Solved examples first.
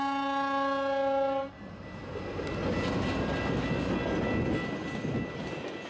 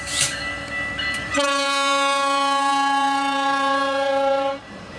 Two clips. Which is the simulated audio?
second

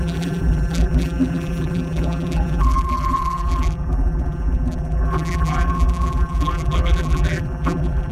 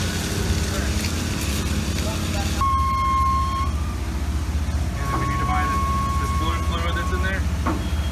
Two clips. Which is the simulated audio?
first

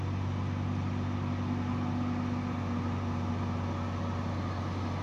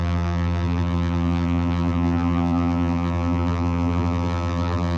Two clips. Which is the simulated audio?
second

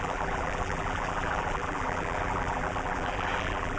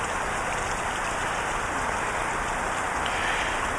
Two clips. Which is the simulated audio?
first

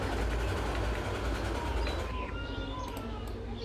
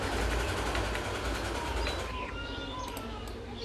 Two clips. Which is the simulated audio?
second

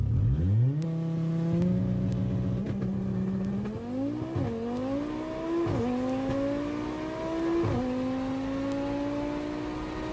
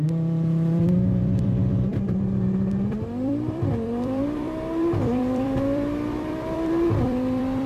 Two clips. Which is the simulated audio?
second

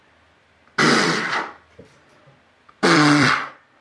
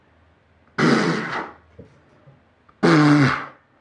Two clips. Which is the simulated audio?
first